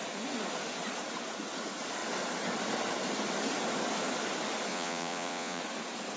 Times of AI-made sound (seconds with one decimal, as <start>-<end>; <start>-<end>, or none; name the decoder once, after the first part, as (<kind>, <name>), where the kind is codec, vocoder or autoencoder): 4.7-5.6 (vocoder, Vocos)